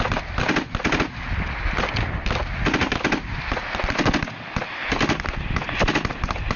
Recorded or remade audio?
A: recorded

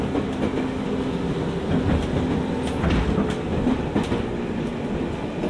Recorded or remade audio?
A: recorded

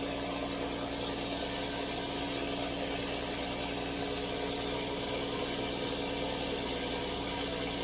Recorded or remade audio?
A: recorded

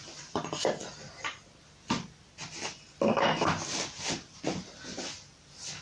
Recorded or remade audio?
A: recorded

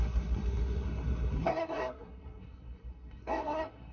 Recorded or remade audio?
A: remade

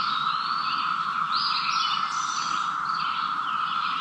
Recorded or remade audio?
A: recorded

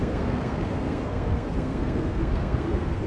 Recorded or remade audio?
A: remade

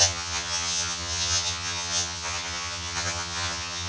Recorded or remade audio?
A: remade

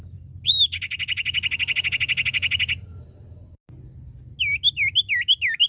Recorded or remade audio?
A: recorded